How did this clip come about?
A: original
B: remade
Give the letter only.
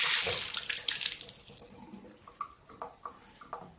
A